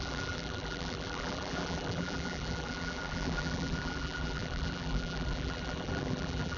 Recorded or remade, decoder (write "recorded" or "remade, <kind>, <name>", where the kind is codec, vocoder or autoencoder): remade, vocoder, BigVGAN v2